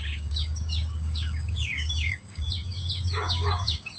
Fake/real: fake